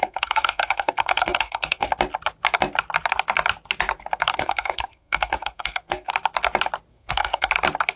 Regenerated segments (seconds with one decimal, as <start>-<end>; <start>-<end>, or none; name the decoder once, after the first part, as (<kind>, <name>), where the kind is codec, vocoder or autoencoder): 0.0-1.9 (codec, SNAC); 4.3-6.1; 6.9-7.5